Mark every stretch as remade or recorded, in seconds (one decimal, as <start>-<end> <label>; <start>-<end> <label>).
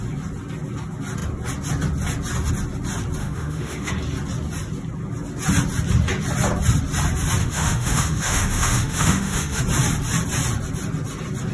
0.0-3.2 recorded; 3.2-3.9 remade; 3.9-7.4 recorded; 7.4-9.6 remade; 9.6-11.5 recorded